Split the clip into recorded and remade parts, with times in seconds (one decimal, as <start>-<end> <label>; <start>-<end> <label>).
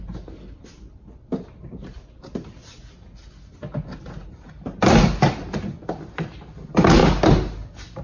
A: 0.0-8.0 recorded